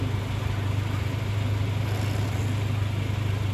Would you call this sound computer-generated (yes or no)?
no